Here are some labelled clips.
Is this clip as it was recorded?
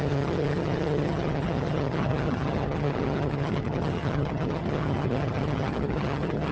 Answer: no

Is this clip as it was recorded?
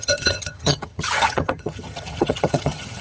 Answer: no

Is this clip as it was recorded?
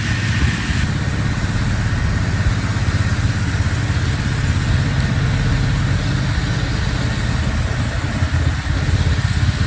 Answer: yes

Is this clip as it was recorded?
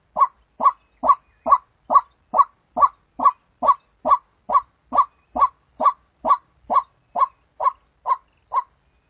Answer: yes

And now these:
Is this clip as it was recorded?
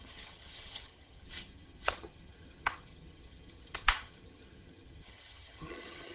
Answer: no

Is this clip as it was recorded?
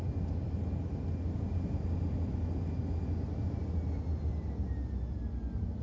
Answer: yes